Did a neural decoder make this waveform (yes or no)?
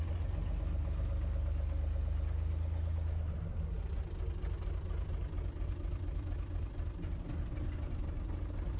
no